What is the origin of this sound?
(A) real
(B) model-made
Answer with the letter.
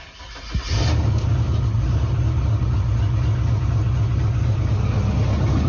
A